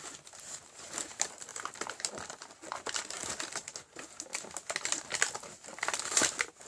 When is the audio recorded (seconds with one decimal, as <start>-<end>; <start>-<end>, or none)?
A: 0.0-6.7